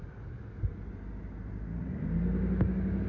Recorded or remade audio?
recorded